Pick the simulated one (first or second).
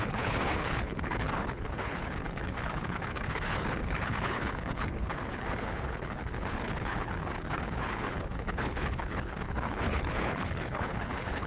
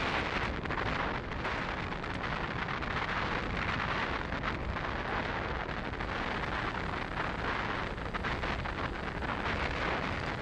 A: first